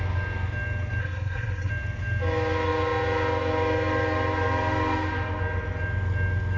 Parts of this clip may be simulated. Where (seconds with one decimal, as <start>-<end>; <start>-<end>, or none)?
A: 1.0-1.7